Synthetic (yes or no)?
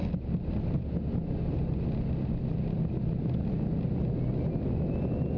no